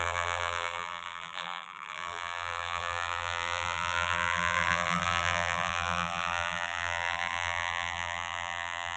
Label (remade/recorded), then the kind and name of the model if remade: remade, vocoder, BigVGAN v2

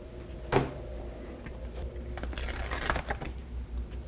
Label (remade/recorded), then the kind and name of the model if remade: recorded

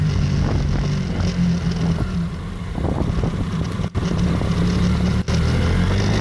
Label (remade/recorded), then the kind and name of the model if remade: recorded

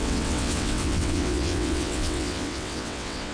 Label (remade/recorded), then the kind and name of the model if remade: remade, vocoder, WaveNeXt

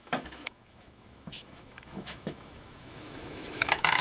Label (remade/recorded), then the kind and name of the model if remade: remade, autoencoder, DAC-VAE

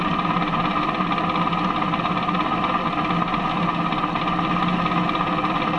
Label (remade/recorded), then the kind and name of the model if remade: recorded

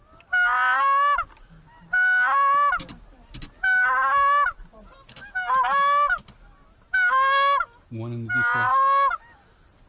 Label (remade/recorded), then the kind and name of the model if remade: recorded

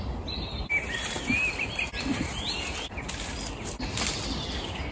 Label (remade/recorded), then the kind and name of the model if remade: recorded